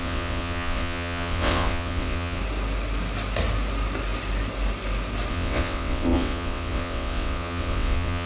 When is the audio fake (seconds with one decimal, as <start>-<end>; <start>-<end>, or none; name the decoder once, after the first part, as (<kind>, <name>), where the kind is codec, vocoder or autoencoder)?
0.0-2.4 (vocoder, WaveNeXt); 5.3-8.3